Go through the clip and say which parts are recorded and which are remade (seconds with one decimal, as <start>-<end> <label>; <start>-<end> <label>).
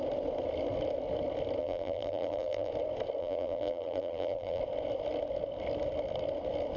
0.0-1.6 recorded; 1.6-2.7 remade; 2.7-3.2 recorded; 3.2-4.6 remade; 4.6-6.8 recorded